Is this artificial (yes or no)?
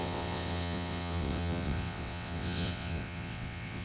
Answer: yes